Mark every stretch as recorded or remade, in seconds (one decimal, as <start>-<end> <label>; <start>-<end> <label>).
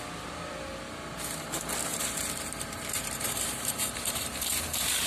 0.0-1.9 recorded; 1.9-5.1 remade